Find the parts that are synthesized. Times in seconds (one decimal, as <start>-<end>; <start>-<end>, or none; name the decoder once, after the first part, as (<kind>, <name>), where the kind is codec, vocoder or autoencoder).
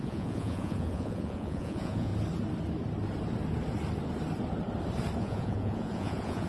0.0-2.1 (vocoder, Vocos); 5.2-6.5